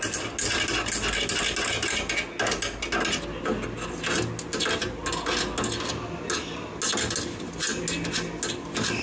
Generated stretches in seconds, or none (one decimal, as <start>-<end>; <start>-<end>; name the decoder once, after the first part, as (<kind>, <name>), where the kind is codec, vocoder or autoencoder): none